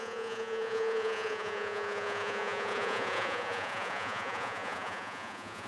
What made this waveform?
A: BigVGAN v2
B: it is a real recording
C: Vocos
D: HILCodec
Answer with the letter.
C